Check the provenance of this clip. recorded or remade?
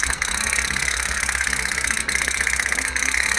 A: remade